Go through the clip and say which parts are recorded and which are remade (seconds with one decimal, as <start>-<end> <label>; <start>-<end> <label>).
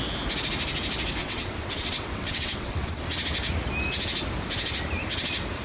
0.0-1.2 recorded; 1.2-2.9 remade; 2.9-5.6 recorded